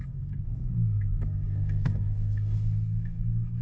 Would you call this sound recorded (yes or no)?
no